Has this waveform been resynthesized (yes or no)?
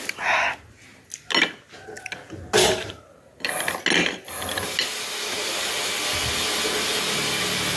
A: no